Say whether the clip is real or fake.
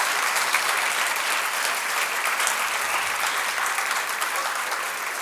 fake